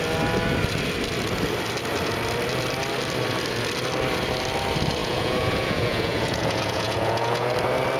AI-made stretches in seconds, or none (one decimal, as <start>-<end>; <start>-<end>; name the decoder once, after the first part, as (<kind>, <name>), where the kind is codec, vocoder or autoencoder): 5.0-7.5 (vocoder, Vocos)